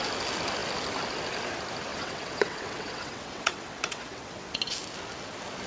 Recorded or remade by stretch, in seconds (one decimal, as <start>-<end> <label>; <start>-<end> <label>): 0.0-1.9 recorded; 1.9-4.6 remade; 4.6-5.7 recorded